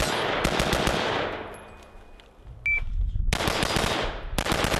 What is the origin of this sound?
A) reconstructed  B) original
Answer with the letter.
B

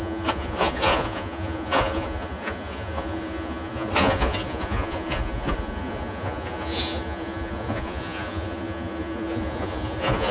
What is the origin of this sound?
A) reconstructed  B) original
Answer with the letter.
A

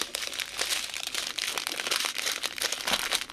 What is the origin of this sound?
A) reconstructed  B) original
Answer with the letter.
B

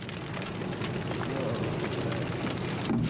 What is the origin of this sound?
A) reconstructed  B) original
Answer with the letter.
B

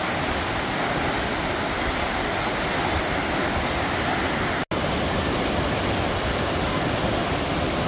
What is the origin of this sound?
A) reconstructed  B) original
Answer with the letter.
B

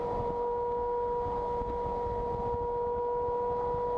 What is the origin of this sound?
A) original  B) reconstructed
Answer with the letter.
A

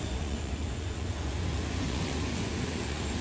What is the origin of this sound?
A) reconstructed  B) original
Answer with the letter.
A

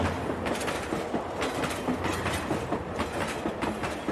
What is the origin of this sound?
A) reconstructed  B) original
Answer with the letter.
B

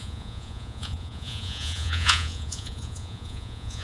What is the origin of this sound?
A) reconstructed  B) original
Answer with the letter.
A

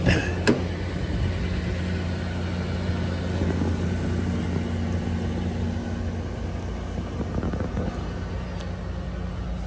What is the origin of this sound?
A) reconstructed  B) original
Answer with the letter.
B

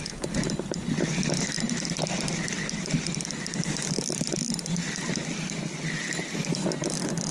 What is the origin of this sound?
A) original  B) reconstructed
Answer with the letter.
A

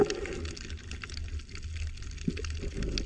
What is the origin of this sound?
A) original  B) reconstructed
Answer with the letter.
A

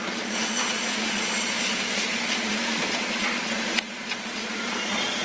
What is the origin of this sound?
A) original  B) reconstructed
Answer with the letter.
B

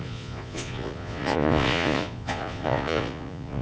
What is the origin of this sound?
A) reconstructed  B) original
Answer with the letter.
A